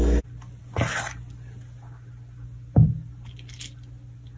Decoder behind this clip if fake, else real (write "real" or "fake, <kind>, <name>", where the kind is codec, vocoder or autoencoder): real